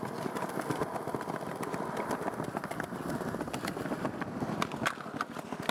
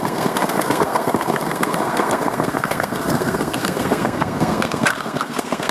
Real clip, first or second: first